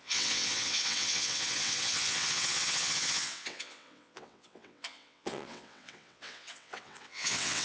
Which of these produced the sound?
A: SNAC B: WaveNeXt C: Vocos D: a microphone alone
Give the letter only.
B